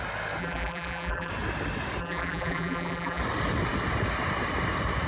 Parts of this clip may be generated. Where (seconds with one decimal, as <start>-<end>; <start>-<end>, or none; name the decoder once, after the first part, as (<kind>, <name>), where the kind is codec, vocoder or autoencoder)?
0.4-1.3 (vocoder, BigVGAN v2); 2.0-3.2